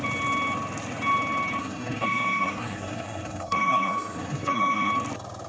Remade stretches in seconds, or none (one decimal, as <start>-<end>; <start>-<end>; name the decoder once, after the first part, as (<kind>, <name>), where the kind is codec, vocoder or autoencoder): 1.6-4.9 (codec, SNAC)